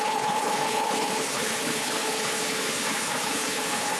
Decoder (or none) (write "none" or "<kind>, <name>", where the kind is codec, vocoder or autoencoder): codec, HILCodec